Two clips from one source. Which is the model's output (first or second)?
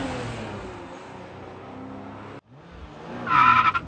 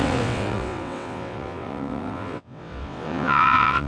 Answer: second